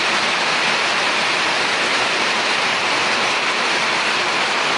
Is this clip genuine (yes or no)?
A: yes